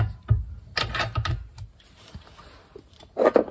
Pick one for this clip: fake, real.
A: real